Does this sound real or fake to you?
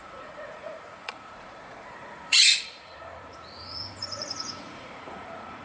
fake